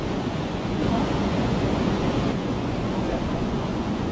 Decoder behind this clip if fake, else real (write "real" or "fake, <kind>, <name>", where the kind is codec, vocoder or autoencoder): fake, vocoder, Vocos